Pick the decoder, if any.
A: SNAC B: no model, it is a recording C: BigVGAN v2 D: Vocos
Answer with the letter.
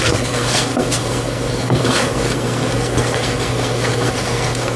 A